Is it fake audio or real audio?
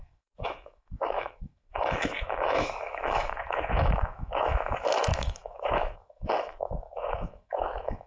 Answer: fake